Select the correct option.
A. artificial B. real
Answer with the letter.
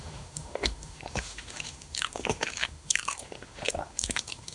A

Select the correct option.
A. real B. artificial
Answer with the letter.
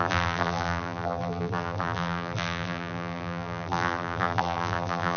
B